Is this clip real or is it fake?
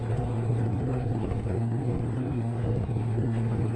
fake